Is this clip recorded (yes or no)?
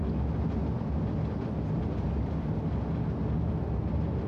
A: yes